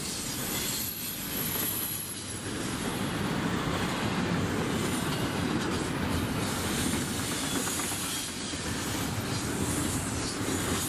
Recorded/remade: remade